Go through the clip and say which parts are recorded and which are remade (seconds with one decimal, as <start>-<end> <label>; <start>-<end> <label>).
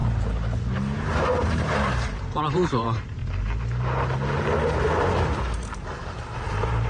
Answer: 0.0-1.4 recorded; 1.4-3.2 remade; 3.2-5.4 recorded; 5.4-6.0 remade; 6.0-6.5 recorded; 6.5-6.9 remade